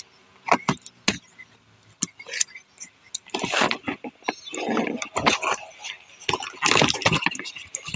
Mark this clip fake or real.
real